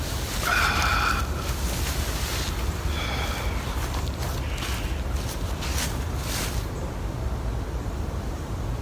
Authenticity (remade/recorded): recorded